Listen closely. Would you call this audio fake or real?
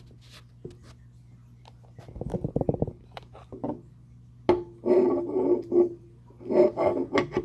real